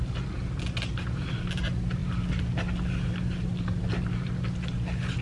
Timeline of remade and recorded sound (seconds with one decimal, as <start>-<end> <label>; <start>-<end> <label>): 0.0-5.2 recorded